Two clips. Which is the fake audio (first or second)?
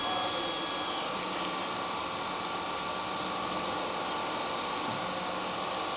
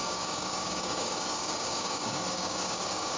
second